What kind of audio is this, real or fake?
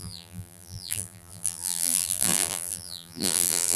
fake